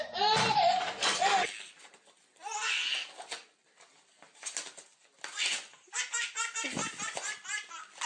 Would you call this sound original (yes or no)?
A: yes